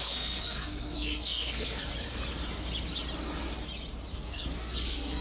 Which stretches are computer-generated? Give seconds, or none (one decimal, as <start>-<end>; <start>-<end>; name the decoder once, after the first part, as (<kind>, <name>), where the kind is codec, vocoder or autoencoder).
0.0-1.9 (codec, SNAC); 4.1-5.2

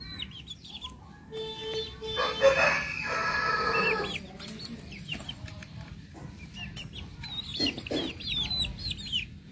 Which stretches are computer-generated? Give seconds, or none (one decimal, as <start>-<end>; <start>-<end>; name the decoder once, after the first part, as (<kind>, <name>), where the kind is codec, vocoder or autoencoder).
none

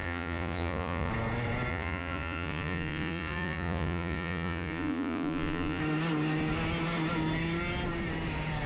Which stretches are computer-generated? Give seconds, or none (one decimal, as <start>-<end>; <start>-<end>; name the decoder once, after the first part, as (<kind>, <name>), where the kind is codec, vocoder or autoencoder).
0.0-1.1 (vocoder, Vocos); 1.7-5.8

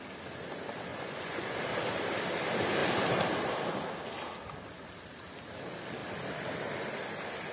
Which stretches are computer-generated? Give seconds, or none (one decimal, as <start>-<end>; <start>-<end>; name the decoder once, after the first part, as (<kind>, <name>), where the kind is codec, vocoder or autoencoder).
0.9-1.6 (vocoder, Vocos)

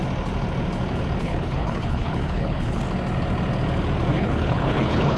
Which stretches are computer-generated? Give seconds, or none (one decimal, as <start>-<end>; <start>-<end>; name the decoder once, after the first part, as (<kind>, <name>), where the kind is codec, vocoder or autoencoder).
1.2-2.8 (codec, HILCodec); 4.1-5.2